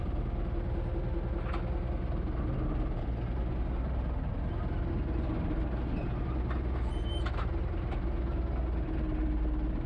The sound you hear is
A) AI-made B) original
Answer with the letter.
B